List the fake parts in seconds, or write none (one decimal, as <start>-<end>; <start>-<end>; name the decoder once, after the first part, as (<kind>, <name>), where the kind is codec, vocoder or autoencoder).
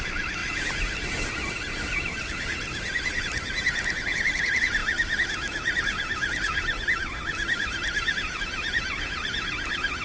4.8-8.4 (vocoder, BigVGAN v2)